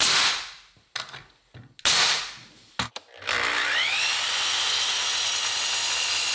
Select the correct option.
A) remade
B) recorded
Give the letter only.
B